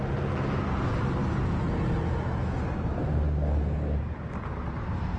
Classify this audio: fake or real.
real